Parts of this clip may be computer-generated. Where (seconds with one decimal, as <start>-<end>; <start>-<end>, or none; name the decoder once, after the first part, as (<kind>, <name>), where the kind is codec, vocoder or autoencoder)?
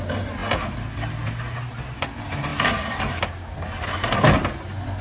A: none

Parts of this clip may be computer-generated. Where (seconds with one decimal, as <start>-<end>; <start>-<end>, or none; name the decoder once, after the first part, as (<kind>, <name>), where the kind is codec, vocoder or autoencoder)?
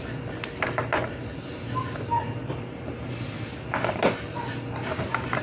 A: none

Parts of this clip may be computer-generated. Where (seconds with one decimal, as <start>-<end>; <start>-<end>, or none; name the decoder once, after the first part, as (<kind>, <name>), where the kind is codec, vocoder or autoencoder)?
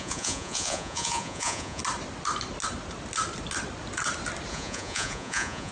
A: 0.0-1.8 (vocoder, Vocos); 4.5-5.7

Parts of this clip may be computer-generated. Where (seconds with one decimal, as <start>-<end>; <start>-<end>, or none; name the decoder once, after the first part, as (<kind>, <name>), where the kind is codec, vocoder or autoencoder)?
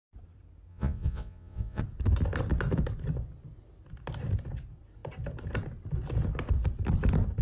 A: 0.7-1.8 (vocoder, Vocos)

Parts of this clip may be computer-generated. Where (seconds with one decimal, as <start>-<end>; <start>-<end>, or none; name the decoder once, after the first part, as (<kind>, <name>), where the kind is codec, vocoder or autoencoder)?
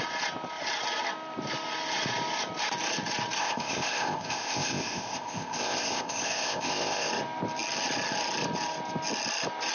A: 3.4-7.1 (codec, ZipCodec)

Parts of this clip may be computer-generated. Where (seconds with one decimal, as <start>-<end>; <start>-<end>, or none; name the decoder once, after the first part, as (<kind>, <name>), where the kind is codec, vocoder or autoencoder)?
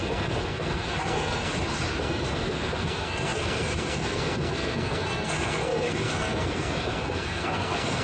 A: 0.0-1.5 (codec, SNAC); 2.0-8.0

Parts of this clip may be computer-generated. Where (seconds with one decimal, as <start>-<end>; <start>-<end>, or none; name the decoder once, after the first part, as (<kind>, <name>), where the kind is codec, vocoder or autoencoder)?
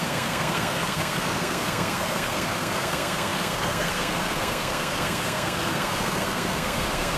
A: 0.0-7.2 (codec, SNAC)